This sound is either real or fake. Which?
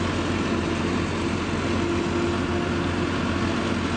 real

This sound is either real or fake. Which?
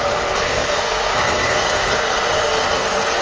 fake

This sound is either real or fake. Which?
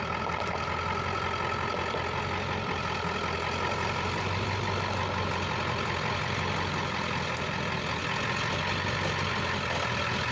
real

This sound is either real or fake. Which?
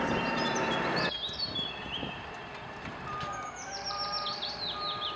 fake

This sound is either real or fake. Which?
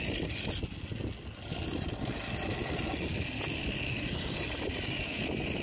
real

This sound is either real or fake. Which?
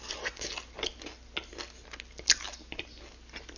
real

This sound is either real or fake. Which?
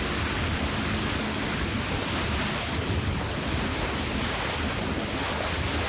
real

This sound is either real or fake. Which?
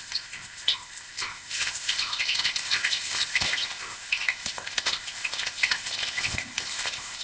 fake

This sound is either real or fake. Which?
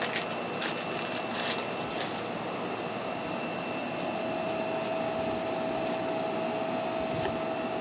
real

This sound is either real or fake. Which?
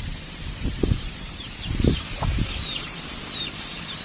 fake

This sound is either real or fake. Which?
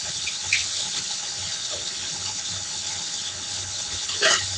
fake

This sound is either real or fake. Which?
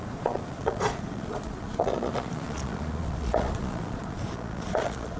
fake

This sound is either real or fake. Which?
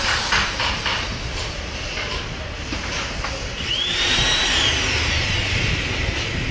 fake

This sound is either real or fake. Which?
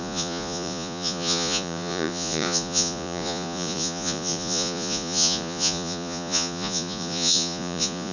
fake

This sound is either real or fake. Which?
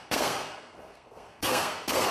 fake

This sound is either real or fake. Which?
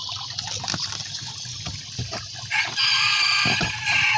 real